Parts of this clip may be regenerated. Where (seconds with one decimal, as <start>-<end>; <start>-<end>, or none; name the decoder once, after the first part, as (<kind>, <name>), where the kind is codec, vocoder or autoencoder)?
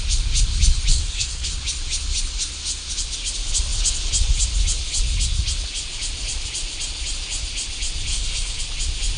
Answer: 0.9-1.5 (codec, SNAC); 8.1-8.6